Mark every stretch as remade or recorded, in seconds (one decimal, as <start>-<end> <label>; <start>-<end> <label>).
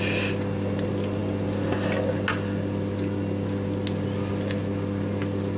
0.0-5.6 recorded